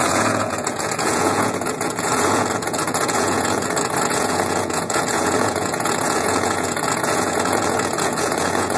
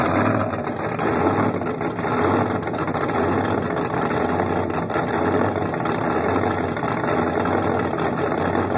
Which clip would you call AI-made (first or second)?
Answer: first